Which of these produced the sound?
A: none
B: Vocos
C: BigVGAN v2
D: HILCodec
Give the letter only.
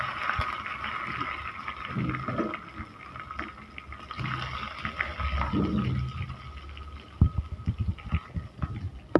A